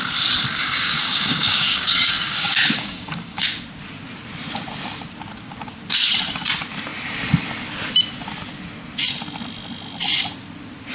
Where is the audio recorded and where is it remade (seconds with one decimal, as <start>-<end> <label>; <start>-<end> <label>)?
0.0-0.6 recorded; 0.6-3.4 remade; 3.4-10.9 recorded